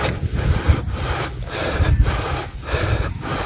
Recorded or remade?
recorded